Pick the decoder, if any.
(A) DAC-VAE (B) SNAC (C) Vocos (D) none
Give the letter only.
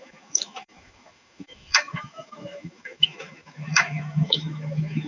A